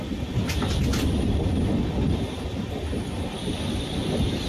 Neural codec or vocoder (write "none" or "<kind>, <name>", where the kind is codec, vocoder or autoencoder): none